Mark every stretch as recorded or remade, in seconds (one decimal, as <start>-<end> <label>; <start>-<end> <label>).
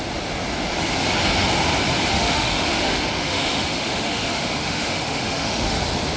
0.0-2.1 recorded; 2.1-5.8 remade; 5.8-6.2 recorded